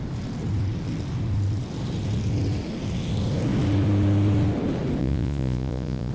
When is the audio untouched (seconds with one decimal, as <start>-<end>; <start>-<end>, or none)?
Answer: 0.0-5.0